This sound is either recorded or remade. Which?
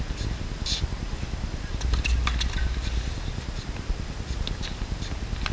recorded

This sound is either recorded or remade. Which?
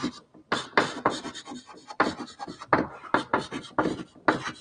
recorded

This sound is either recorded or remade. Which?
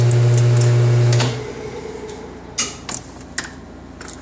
recorded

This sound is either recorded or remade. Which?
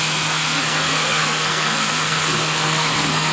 remade